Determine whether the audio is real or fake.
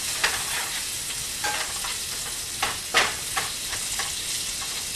real